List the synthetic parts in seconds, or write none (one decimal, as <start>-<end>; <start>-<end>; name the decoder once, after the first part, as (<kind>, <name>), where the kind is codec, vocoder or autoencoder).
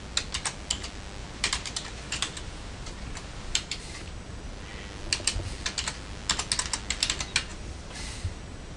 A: 1.2-3.8 (vocoder, BigVGAN v2)